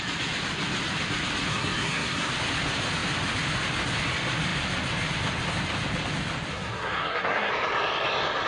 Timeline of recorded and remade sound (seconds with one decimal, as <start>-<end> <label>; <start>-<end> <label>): 0.0-1.5 recorded; 1.5-2.3 remade; 2.3-6.5 recorded; 6.5-7.5 remade; 7.5-8.5 recorded

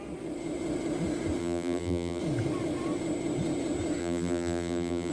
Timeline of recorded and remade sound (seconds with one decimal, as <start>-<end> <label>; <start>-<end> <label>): 0.0-1.4 recorded; 1.4-2.2 remade; 2.2-4.0 recorded; 4.0-5.1 remade

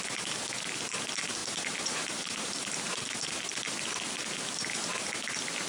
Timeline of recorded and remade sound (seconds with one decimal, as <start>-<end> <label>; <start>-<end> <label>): 0.0-1.4 recorded; 1.4-2.9 remade; 2.9-5.7 recorded

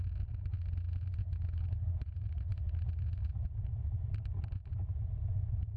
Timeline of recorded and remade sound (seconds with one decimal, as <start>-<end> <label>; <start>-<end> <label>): 0.0-1.2 recorded; 1.2-2.5 remade; 2.5-5.8 recorded

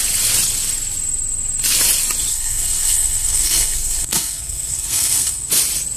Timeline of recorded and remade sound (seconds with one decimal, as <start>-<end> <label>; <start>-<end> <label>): 0.0-2.3 recorded; 2.3-5.5 remade; 5.5-6.0 recorded

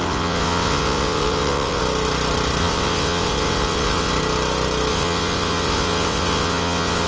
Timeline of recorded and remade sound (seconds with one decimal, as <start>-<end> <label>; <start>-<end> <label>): 0.0-1.8 remade; 1.8-2.6 recorded; 2.6-4.1 remade; 4.1-4.9 recorded; 4.9-7.1 remade